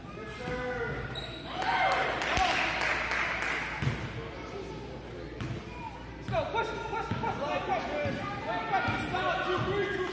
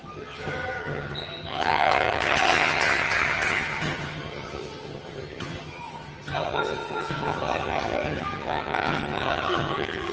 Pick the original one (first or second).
first